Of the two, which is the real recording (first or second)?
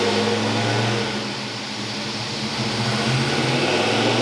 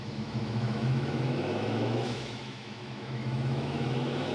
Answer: first